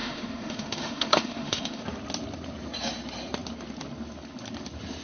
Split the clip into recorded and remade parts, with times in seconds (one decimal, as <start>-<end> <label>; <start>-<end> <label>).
0.0-1.8 remade; 1.8-5.0 recorded